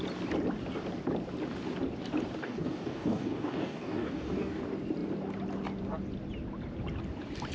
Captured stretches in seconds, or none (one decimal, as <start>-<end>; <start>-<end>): 0.0-2.4; 4.6-7.5